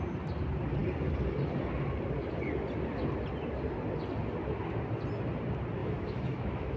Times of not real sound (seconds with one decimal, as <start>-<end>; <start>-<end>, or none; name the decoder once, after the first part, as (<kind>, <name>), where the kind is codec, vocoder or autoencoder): 5.8-6.8 (autoencoder, DAC-VAE)